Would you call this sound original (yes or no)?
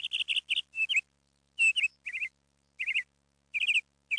yes